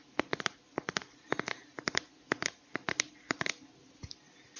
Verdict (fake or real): real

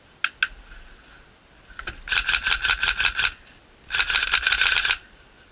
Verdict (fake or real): real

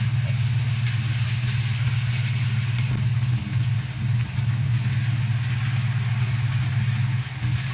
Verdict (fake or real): real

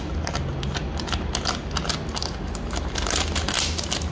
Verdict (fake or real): real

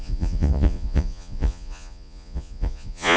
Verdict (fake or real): fake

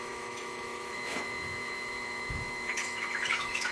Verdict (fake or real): fake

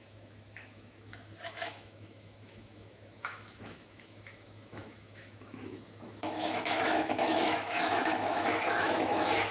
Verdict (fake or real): fake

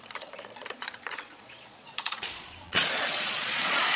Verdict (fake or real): fake